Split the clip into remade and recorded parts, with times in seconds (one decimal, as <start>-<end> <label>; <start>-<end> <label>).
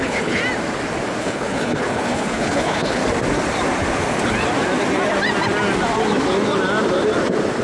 0.0-0.4 remade; 0.4-1.2 recorded; 1.2-3.0 remade; 3.0-7.6 recorded